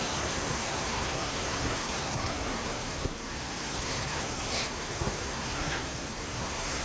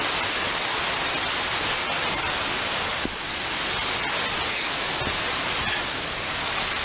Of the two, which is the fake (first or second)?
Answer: first